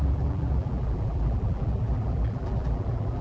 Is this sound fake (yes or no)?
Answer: yes